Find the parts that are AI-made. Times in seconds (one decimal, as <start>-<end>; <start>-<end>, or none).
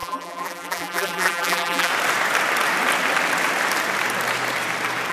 0.0-1.9